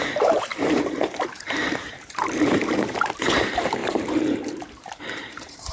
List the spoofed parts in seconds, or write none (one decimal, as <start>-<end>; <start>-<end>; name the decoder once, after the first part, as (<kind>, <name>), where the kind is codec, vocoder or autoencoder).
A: 0.0-5.7 (vocoder, BigVGAN v2)